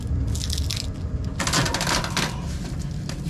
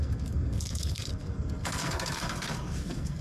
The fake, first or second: second